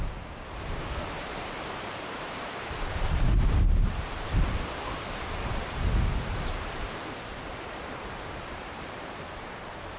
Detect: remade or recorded remade